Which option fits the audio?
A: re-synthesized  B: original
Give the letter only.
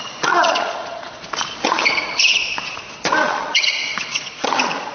A